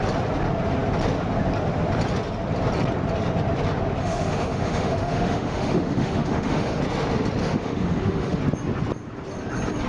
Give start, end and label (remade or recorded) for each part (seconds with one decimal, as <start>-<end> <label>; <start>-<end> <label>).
0.0-4.0 recorded; 4.0-6.8 remade; 6.8-7.4 recorded; 7.4-8.4 remade; 8.4-9.9 recorded